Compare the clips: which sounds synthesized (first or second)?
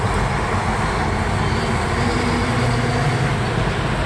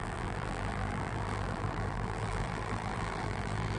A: second